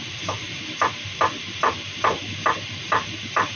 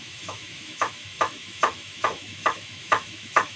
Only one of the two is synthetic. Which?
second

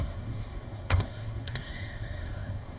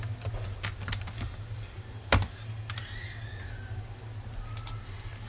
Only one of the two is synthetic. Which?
first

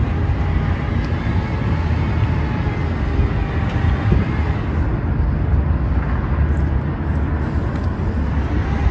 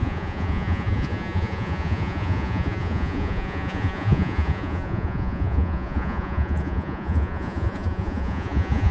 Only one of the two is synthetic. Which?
second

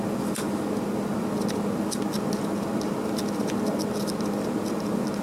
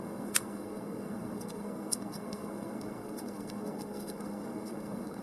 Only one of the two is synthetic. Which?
second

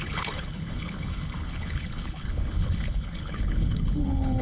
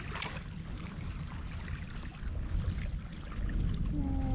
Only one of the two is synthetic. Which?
first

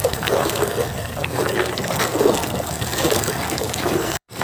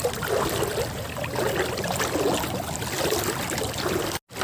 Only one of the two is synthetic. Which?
first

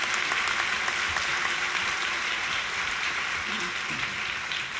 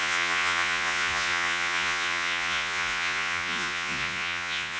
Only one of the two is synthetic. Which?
second